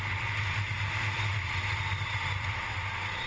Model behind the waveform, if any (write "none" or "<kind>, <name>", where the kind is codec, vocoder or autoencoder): none